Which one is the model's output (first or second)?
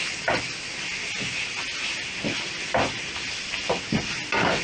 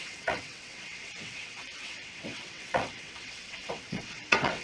second